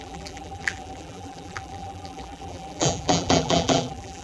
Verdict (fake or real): fake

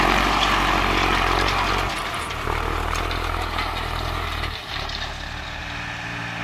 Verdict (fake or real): real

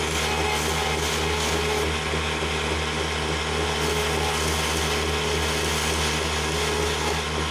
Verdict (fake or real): real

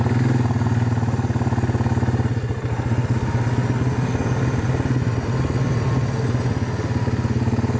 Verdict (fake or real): real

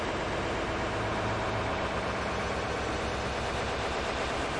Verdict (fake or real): fake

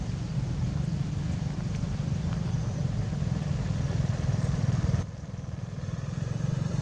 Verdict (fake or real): fake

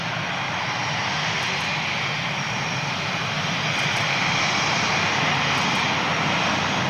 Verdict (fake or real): real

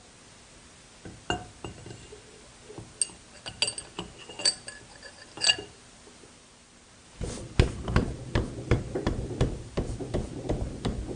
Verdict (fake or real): real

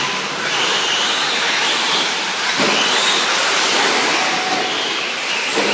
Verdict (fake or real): fake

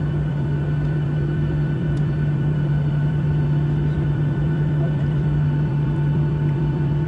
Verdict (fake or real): fake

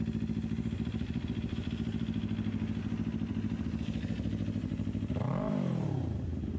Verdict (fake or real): real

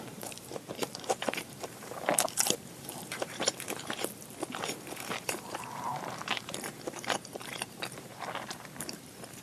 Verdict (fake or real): fake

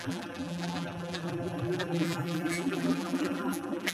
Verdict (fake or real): fake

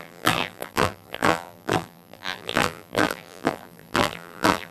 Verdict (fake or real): fake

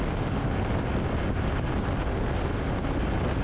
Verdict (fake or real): real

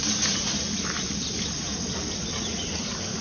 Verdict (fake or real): fake